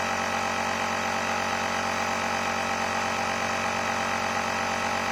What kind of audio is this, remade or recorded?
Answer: recorded